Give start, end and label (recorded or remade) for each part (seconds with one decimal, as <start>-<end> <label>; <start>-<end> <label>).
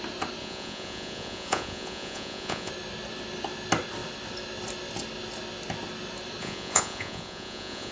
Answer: 0.0-0.4 recorded; 0.4-2.7 remade; 2.7-6.4 recorded; 6.4-7.9 remade